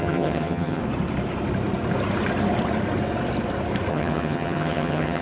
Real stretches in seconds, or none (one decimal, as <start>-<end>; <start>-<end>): 0.8-3.9